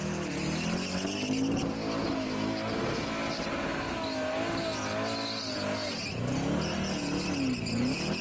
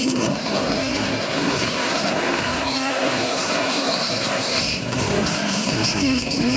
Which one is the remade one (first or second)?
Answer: second